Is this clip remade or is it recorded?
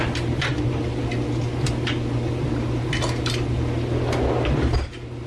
recorded